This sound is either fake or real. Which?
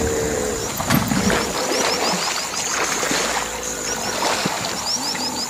real